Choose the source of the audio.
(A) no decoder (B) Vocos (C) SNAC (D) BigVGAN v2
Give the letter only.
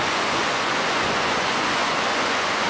B